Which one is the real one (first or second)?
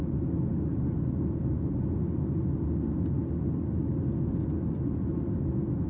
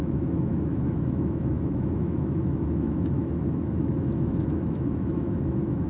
first